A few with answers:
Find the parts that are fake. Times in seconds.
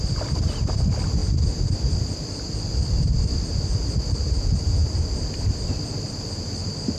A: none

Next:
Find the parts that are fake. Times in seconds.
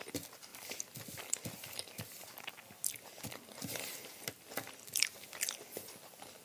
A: none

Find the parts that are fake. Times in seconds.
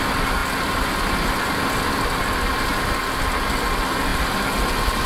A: none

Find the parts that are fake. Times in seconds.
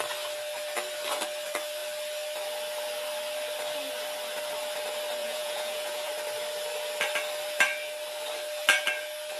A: 5.2-6.1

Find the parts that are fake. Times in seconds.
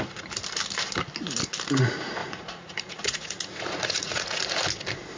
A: 2.2-4.4